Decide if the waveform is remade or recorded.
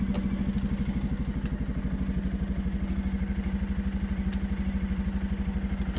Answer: recorded